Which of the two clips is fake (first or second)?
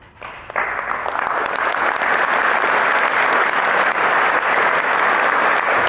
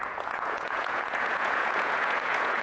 second